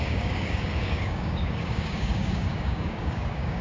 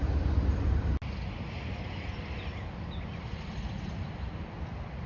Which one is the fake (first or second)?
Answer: first